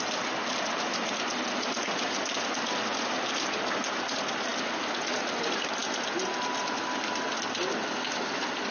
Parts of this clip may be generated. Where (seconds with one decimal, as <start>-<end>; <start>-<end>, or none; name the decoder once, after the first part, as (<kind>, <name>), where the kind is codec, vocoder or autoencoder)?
none